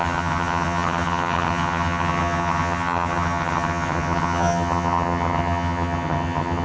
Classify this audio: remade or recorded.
remade